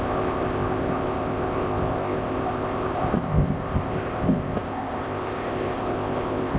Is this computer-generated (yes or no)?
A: yes